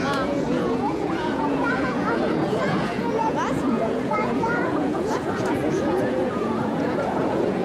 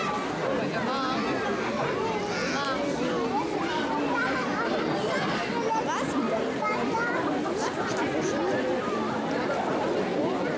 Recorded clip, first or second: second